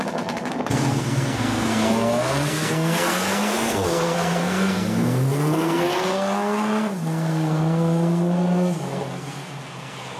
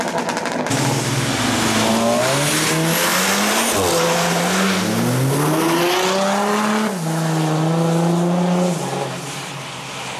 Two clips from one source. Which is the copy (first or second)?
first